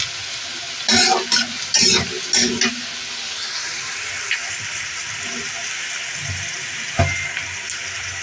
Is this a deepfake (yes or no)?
no